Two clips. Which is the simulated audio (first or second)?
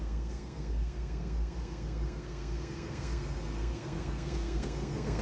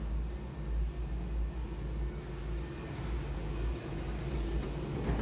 first